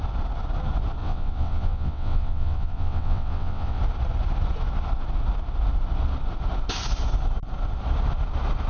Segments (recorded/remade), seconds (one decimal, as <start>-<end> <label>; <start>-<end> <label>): 0.0-1.0 recorded; 1.0-3.8 remade; 3.8-8.7 recorded